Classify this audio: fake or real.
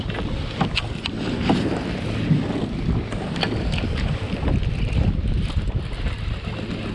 real